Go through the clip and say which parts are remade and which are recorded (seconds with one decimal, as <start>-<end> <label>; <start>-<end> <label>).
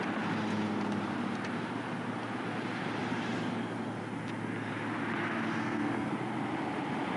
0.0-5.6 recorded; 5.6-6.1 remade; 6.1-7.2 recorded